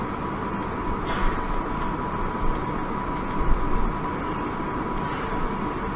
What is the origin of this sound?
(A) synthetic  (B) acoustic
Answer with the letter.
B